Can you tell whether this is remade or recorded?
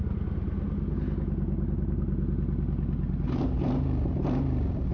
recorded